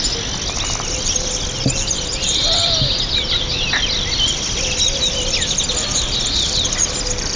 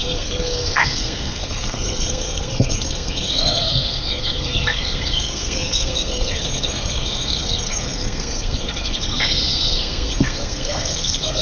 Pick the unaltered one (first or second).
first